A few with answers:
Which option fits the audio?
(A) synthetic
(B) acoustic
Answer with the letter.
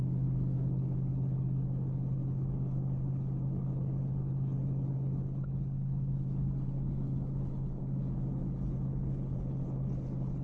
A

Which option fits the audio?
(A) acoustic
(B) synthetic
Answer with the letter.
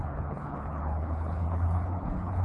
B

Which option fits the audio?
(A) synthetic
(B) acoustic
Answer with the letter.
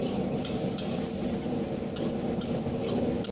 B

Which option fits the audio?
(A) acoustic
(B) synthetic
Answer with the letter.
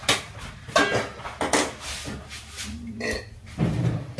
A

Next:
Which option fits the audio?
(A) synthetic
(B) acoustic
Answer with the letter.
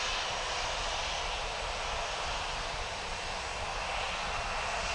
B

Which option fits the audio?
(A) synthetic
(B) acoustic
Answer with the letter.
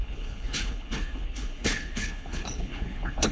A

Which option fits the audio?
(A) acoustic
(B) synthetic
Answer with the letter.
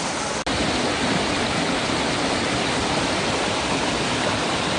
A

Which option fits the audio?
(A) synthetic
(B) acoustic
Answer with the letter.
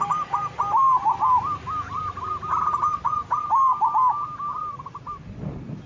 B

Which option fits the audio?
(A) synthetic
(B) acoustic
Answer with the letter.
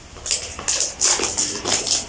B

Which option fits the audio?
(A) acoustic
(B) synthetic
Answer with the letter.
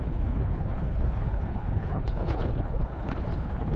B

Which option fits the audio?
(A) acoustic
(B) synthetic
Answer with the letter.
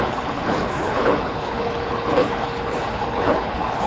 B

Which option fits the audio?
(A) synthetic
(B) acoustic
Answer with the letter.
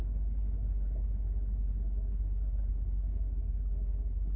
A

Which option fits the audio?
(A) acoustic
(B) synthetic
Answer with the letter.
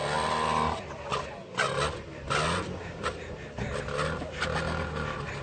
A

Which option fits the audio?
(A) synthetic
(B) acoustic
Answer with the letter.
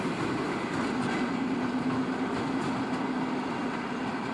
B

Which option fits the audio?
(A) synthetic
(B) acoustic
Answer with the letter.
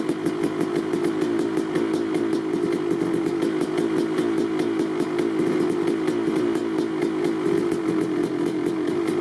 B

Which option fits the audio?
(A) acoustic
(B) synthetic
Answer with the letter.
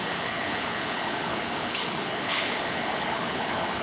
B